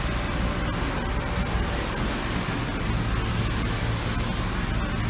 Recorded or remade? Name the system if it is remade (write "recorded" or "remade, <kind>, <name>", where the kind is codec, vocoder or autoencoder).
recorded